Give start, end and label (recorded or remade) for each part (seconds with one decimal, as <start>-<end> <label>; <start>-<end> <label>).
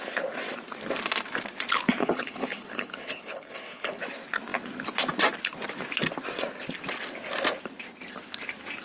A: 0.0-2.0 recorded; 2.0-4.0 remade; 4.0-8.8 recorded